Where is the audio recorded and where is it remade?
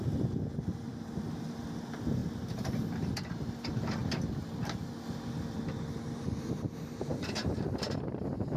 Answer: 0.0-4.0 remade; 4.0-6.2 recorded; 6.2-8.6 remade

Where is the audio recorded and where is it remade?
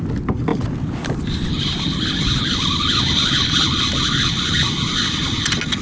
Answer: 0.0-5.8 recorded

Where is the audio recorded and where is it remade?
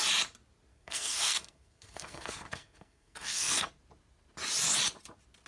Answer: 0.0-0.7 recorded; 0.7-3.7 remade; 3.7-5.5 recorded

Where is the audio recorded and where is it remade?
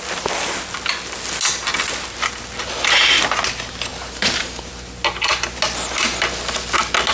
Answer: 0.0-3.9 recorded; 3.9-4.7 remade; 4.7-7.1 recorded